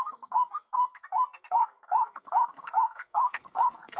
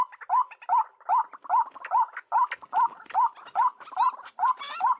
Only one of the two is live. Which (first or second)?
second